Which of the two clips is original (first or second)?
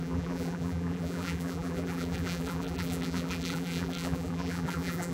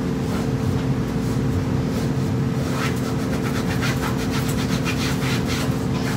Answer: second